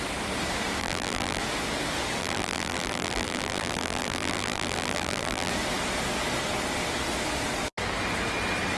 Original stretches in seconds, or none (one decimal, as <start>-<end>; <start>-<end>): 0.0-0.8; 1.4-2.2; 5.5-8.8